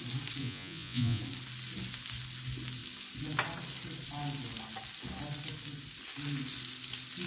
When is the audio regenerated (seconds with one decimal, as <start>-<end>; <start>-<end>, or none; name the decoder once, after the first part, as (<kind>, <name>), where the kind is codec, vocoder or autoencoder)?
0.4-1.2 (vocoder, Vocos)